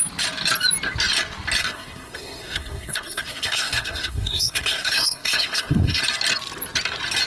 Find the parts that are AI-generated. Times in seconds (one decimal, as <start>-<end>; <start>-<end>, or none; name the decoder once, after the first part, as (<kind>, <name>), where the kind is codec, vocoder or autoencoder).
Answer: 1.6-6.0 (codec, SNAC)